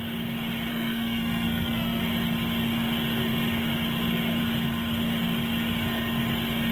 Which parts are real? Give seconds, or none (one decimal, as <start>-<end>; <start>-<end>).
0.0-0.7; 2.0-6.7